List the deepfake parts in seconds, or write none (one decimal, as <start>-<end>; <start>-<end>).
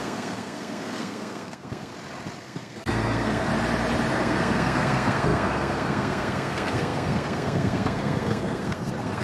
0.0-1.9; 2.4-3.5; 4.1-9.2